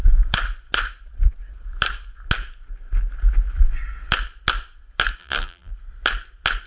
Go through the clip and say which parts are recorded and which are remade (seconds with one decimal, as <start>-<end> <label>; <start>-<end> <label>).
0.0-5.2 recorded; 5.2-5.7 remade; 5.7-6.7 recorded